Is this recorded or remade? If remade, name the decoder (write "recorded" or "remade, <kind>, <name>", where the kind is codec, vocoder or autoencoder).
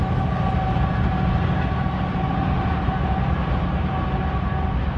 recorded